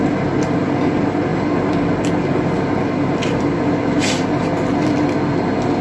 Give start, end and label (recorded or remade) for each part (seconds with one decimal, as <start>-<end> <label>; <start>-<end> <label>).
0.0-5.8 recorded